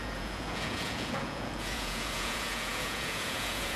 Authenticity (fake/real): fake